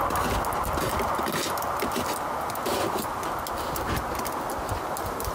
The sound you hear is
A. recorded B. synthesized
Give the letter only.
A